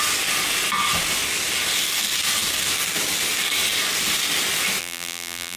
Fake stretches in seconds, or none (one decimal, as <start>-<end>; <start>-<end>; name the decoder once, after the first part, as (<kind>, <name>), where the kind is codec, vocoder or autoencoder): 4.8-5.6 (vocoder, BigVGAN v2)